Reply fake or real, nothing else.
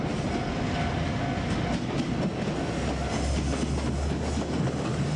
real